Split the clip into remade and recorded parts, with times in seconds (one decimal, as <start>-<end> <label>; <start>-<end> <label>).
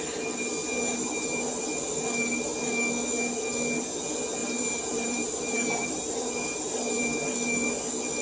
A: 0.0-0.6 recorded; 0.6-1.6 remade; 1.6-4.4 recorded; 4.4-7.3 remade; 7.3-8.2 recorded